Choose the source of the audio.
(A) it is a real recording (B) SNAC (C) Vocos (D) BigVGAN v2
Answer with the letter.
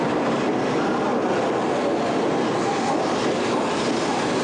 A